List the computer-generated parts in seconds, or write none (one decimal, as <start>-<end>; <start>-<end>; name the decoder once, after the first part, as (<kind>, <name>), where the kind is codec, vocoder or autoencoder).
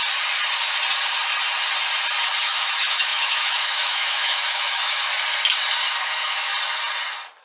2.4-5.1 (autoencoder, DAC-VAE); 5.9-6.5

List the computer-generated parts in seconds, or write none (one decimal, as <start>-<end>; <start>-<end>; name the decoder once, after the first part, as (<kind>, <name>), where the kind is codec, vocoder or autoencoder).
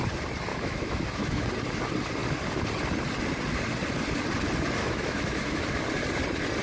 0.5-1.5 (autoencoder, DAC-VAE); 4.8-5.8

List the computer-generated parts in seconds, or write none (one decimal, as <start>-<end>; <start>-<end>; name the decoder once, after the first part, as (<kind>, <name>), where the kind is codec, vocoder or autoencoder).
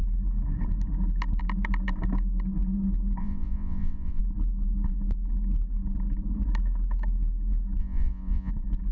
3.2-4.2 (vocoder, Vocos); 7.8-8.5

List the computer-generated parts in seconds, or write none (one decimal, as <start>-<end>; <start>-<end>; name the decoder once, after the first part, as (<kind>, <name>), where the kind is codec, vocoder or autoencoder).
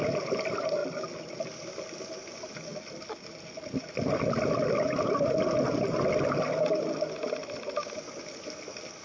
none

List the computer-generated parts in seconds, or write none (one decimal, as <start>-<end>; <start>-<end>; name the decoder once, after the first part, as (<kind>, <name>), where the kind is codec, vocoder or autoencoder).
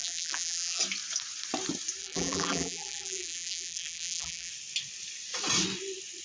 0.0-0.8 (vocoder, BigVGAN v2); 2.0-4.5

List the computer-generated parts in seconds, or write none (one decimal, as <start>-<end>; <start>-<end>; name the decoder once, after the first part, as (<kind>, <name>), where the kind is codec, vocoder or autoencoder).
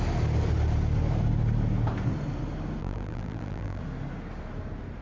2.8-3.8 (vocoder, BigVGAN v2)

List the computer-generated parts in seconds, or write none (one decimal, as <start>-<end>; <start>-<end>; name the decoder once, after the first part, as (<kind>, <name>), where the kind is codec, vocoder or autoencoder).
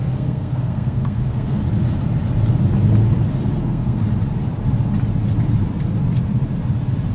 0.0-1.6 (codec, SNAC); 3.6-4.0